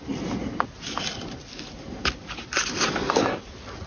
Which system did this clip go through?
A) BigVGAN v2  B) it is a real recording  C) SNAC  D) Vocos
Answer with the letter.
B